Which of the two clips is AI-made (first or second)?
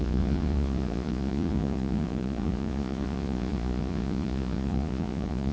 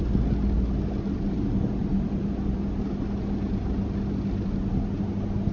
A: first